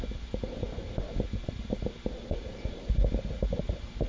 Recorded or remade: recorded